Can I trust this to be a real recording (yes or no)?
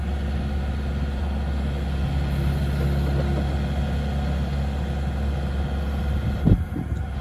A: yes